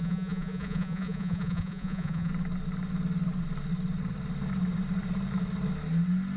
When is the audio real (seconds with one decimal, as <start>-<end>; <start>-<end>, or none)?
2.3-6.4